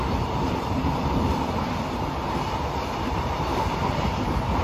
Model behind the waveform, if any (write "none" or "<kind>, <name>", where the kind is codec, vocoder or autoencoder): vocoder, BigVGAN v2